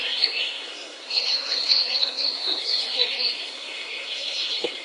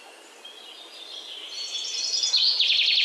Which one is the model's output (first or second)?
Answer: first